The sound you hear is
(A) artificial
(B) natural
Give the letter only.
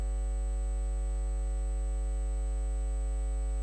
B